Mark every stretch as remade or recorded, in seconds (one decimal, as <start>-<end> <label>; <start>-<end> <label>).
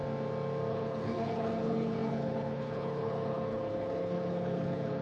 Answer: 0.0-0.7 recorded; 0.7-5.0 remade